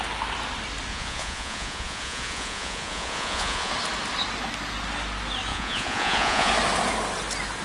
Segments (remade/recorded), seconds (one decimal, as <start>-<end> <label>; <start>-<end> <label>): 0.0-0.9 recorded; 0.9-3.7 remade; 3.7-5.5 recorded; 5.5-6.5 remade; 6.5-7.6 recorded